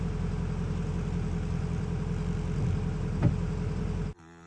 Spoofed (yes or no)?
no